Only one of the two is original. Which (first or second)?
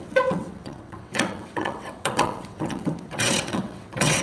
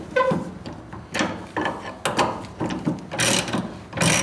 second